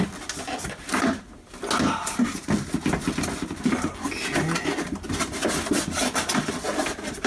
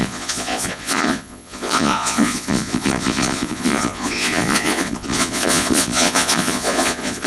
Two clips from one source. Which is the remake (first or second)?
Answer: second